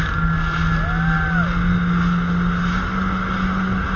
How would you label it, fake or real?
real